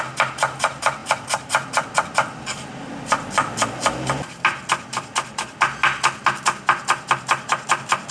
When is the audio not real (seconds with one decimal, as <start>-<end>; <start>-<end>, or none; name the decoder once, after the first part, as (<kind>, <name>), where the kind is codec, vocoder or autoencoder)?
none